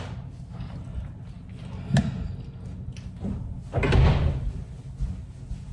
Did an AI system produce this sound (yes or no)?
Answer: no